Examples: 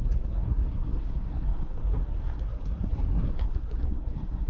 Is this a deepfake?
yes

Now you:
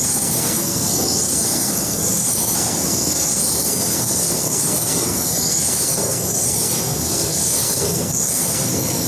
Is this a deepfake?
yes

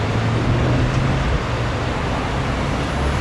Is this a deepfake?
no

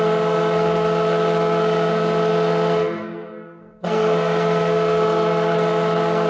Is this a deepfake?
yes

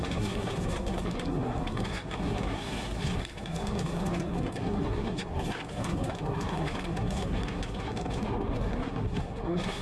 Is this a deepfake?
yes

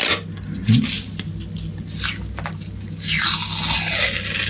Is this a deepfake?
no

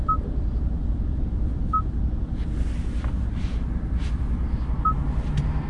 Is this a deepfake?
no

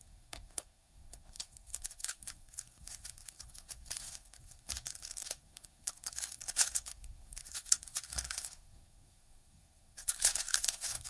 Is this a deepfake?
yes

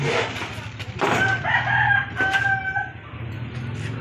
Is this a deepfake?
no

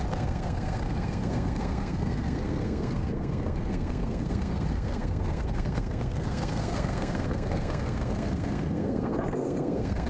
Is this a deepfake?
yes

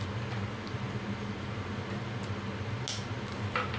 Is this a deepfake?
no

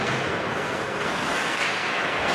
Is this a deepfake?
yes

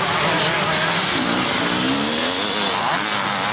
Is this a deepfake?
no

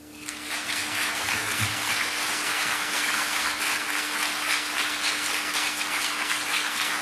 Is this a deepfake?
yes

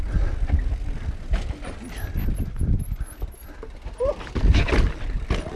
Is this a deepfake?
no